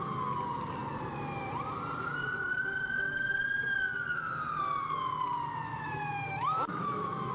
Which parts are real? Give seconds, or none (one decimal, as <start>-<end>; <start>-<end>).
0.0-5.7